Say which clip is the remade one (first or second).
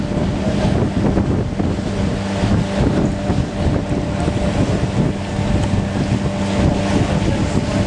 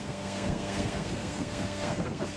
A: second